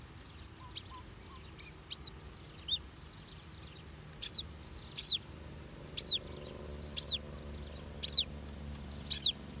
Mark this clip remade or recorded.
recorded